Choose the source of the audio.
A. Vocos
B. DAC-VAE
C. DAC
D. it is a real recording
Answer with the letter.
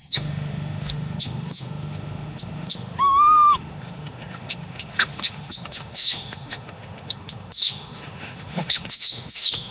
B